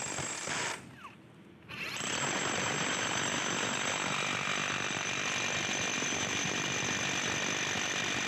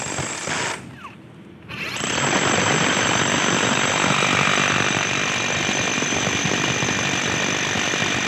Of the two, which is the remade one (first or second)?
second